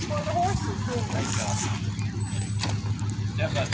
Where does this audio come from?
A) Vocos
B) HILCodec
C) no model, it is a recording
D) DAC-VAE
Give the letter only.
C